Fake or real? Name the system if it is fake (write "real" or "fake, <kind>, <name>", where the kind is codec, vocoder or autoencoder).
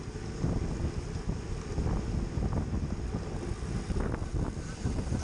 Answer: real